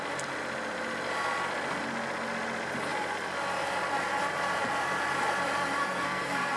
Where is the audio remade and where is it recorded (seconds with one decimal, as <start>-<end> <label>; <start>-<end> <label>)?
0.0-5.8 recorded; 5.8-6.6 remade